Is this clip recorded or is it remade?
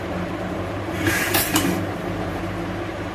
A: remade